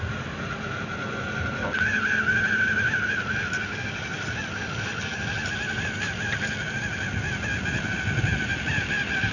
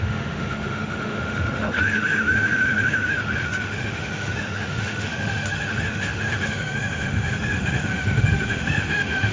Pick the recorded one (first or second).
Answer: first